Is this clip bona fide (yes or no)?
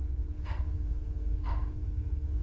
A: no